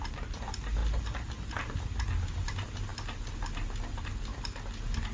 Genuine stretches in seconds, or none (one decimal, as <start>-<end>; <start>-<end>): 0.0-5.1